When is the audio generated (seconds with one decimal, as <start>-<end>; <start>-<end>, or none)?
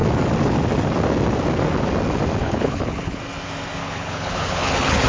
2.4-3.2; 3.8-5.1